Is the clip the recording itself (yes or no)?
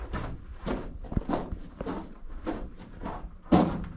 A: no